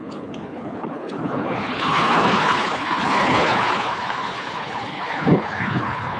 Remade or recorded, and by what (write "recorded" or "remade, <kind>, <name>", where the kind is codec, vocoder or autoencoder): remade, codec, HILCodec